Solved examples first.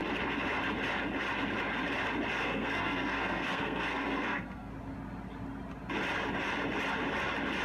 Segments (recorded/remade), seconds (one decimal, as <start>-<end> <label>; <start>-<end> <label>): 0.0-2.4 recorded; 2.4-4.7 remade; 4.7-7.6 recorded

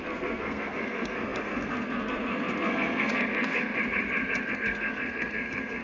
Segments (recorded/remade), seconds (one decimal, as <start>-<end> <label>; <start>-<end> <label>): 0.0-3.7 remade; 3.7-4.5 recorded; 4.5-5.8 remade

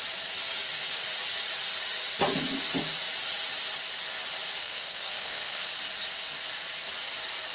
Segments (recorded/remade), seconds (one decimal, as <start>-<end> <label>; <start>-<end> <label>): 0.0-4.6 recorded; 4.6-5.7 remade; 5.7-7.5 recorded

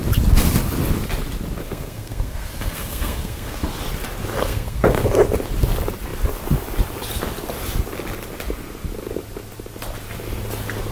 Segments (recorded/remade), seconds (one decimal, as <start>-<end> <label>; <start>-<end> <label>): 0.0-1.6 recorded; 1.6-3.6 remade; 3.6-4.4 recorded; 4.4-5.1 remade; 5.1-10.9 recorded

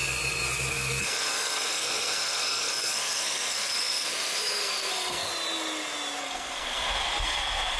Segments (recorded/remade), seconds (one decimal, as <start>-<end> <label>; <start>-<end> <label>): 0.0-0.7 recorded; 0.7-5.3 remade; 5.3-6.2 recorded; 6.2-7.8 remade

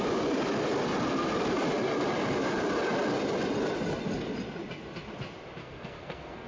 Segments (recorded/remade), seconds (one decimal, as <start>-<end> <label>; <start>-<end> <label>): 0.0-5.6 recorded; 5.6-6.5 remade